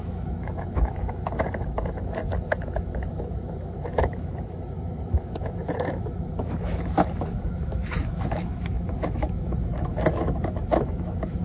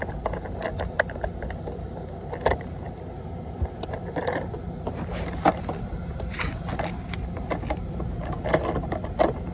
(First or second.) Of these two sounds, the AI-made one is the first